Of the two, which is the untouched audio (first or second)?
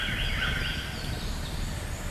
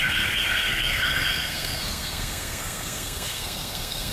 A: first